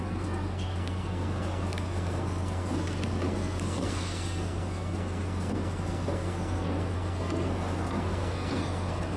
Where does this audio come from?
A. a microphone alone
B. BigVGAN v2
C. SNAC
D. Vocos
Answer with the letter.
C